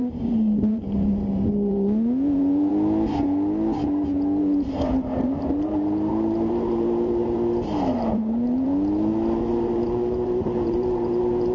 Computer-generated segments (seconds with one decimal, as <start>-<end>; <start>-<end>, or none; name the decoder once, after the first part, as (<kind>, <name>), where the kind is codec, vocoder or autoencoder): 0.0-2.7 (vocoder, BigVGAN v2); 4.4-8.7; 9.4-11.5